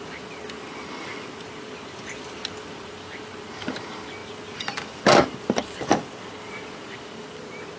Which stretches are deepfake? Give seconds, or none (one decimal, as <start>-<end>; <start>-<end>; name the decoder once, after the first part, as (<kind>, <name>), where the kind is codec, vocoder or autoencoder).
none